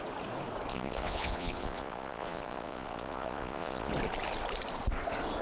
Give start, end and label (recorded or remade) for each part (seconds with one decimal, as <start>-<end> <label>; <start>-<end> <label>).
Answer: 0.0-0.7 recorded; 0.7-3.9 remade; 3.9-5.4 recorded